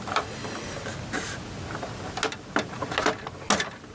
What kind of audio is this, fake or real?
real